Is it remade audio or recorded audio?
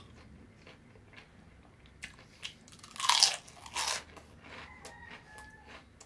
recorded